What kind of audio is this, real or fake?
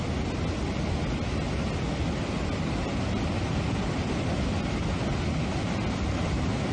real